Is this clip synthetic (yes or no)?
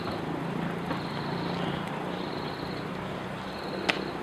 no